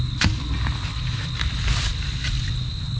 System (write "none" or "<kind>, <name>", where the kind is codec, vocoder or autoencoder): none